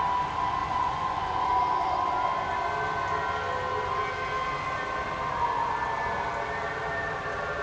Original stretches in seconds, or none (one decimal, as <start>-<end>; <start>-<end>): 0.0-0.6; 1.5-7.6